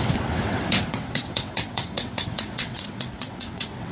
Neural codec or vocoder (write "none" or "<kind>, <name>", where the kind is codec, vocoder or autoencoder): vocoder, WaveNeXt